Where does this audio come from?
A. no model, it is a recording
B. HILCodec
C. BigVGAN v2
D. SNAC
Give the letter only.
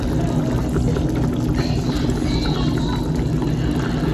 A